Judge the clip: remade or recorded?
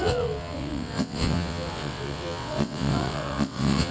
remade